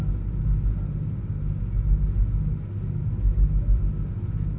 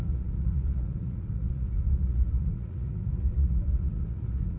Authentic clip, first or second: first